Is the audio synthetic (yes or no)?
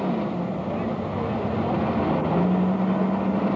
no